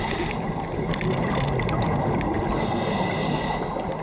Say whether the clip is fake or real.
real